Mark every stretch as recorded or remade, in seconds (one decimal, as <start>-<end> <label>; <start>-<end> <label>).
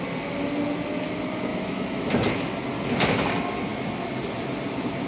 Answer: 0.0-1.5 recorded; 1.5-2.1 remade; 2.1-5.1 recorded